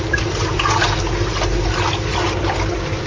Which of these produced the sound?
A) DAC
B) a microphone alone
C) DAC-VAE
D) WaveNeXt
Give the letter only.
B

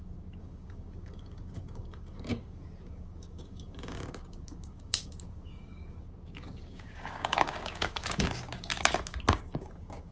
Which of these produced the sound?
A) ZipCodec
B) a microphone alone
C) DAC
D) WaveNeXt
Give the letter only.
C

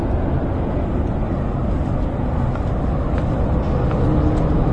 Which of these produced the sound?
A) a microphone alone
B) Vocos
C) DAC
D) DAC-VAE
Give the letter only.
A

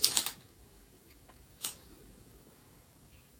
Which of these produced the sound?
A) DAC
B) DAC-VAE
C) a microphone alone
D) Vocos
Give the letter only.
A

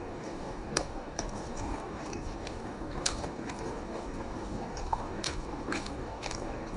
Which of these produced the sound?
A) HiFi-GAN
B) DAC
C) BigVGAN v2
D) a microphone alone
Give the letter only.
B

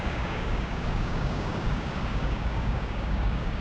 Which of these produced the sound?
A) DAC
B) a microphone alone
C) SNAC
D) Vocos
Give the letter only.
A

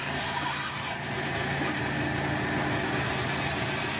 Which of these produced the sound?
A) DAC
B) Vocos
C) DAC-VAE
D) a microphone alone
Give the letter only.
D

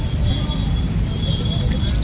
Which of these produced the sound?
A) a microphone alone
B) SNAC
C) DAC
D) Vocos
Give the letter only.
A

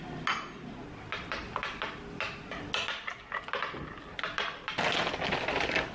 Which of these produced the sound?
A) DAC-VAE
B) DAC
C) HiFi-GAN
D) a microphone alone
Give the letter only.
D